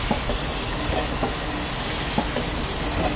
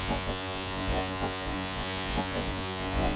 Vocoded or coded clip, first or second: second